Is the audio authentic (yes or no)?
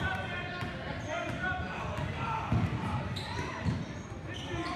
yes